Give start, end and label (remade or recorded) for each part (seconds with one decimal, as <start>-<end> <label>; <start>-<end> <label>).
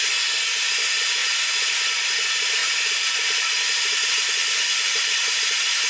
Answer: 0.0-2.6 recorded; 2.6-3.4 remade; 3.4-5.9 recorded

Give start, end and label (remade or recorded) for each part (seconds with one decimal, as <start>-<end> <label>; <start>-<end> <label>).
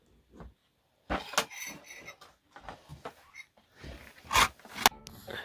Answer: 0.0-5.4 recorded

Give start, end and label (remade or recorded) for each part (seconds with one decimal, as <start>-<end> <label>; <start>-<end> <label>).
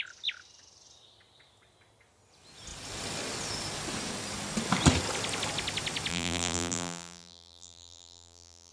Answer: 0.0-6.1 recorded; 6.1-8.7 remade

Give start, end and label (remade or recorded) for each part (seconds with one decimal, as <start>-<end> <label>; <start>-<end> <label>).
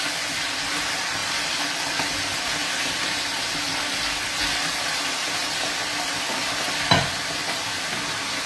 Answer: 0.0-1.2 recorded; 1.2-2.2 remade; 2.2-7.4 recorded; 7.4-8.5 remade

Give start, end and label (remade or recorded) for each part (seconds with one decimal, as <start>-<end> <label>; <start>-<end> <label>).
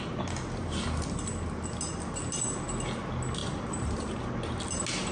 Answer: 0.0-3.4 recorded; 3.4-4.6 remade; 4.6-5.1 recorded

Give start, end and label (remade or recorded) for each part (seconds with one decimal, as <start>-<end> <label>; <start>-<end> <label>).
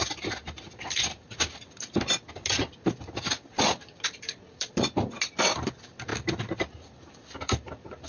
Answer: 0.0-3.7 recorded; 3.7-8.1 remade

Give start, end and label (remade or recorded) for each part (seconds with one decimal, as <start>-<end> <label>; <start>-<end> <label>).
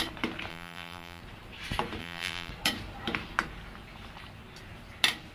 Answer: 0.0-0.5 recorded; 0.5-1.2 remade; 1.2-2.0 recorded; 2.0-2.5 remade; 2.5-5.3 recorded